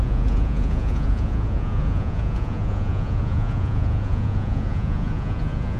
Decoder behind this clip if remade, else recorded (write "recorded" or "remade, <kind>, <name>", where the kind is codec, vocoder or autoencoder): remade, vocoder, Vocos